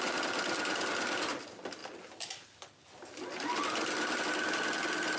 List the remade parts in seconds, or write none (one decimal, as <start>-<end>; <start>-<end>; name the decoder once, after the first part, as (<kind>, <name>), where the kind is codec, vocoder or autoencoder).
none